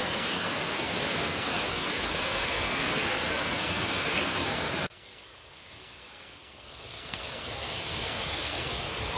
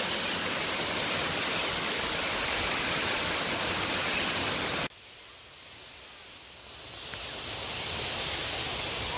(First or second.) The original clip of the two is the second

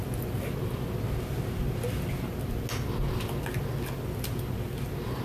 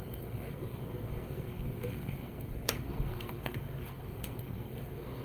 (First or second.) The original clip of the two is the first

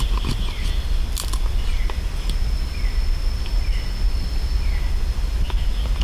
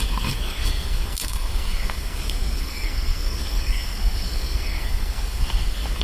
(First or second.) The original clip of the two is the first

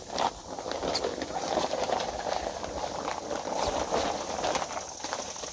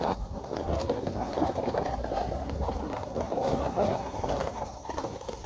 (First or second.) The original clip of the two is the first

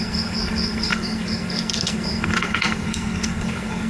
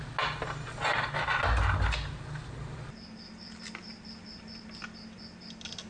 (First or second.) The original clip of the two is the second